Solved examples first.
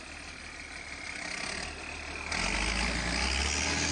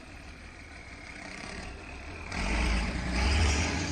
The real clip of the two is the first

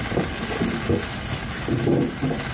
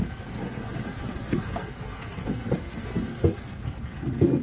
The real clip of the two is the first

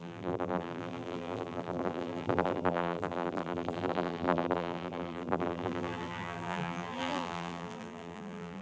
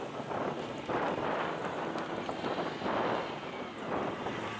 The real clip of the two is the second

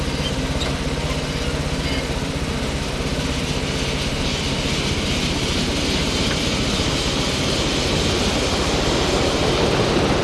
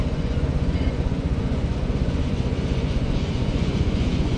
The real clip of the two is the first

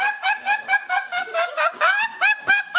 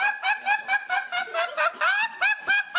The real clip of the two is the second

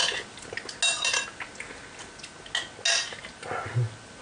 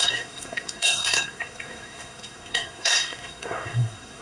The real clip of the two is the first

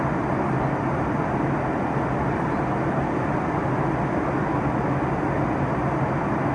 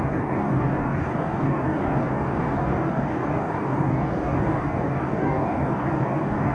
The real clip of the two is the first